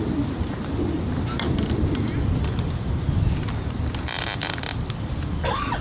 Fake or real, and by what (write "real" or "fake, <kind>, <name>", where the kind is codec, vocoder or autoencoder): fake, vocoder, BigVGAN v2